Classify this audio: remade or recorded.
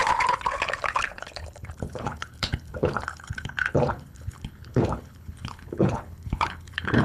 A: remade